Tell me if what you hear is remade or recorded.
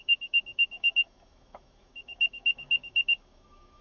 remade